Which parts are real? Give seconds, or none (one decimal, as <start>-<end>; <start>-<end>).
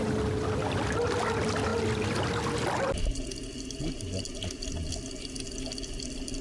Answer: 0.0-6.4